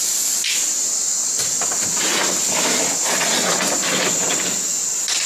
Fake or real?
real